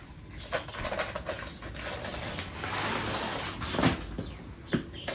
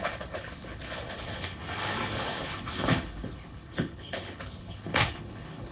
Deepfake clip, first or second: second